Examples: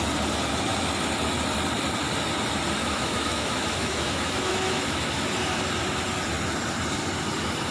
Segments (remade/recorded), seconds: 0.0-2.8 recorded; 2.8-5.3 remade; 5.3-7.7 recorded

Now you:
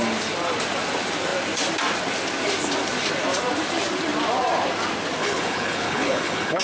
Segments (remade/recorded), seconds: 0.0-5.2 recorded; 5.2-6.6 remade

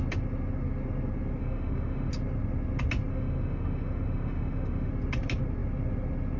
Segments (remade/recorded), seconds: 0.0-1.4 recorded; 1.4-2.1 remade; 2.1-3.1 recorded; 3.1-4.9 remade; 4.9-6.4 recorded

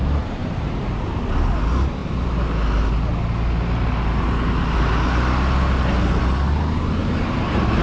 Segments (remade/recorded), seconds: 0.0-0.4 recorded; 0.4-1.2 remade; 1.2-7.0 recorded; 7.0-7.8 remade

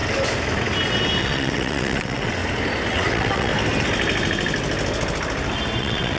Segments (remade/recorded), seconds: 0.0-1.2 recorded; 1.2-2.4 remade; 2.4-2.9 recorded; 2.9-3.5 remade; 3.5-5.8 recorded; 5.8-6.2 remade

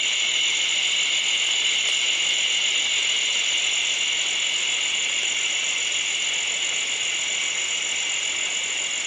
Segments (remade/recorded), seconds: 0.0-9.1 recorded